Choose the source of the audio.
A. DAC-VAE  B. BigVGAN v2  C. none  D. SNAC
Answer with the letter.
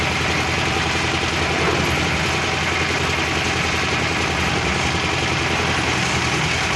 C